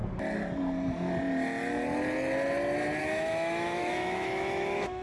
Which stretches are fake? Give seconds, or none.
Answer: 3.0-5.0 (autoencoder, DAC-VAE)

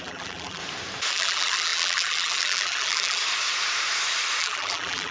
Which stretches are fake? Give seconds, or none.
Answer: 0.0-0.6 (vocoder, BigVGAN v2); 1.1-3.2; 4.4-5.1

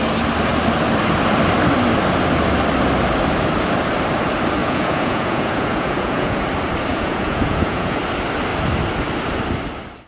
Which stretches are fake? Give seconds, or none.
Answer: 4.6-6.4 (vocoder, Vocos); 6.9-8.0

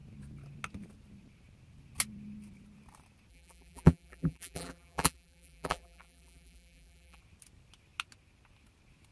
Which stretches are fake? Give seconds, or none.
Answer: 3.3-7.2 (vocoder, BigVGAN v2)